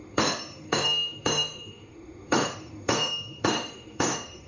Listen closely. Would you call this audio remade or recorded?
remade